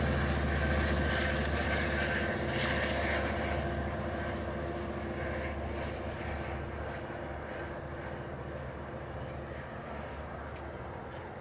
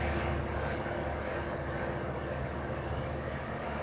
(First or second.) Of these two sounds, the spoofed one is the second